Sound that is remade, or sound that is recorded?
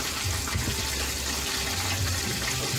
recorded